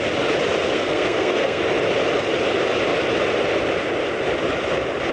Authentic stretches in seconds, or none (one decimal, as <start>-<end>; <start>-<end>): 0.0-0.6; 1.6-5.1